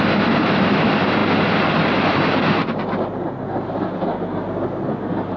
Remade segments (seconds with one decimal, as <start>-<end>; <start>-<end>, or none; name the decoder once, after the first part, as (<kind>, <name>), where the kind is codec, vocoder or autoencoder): 0.0-5.4 (vocoder, BigVGAN v2)